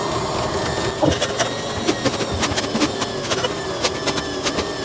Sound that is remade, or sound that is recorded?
recorded